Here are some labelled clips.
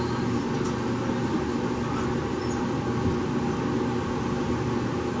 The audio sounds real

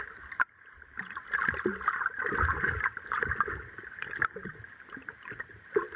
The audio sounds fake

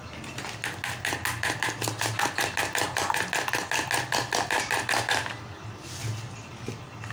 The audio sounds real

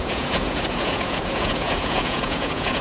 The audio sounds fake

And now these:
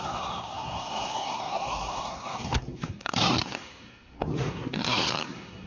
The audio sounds fake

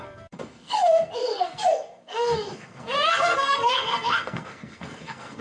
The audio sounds fake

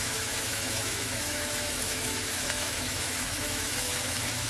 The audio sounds fake